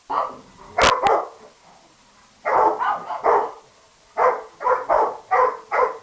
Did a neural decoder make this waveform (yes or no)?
no